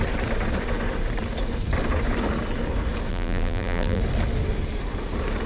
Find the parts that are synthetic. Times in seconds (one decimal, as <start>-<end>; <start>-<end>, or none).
3.1-4.0